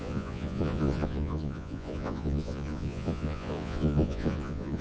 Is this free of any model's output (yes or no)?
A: no